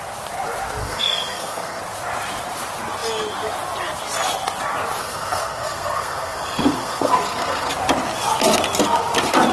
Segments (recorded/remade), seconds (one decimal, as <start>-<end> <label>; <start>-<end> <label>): 0.0-0.8 recorded; 0.8-1.8 remade; 1.8-5.0 recorded; 5.0-7.7 remade; 7.7-9.5 recorded